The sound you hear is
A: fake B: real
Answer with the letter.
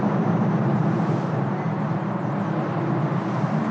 B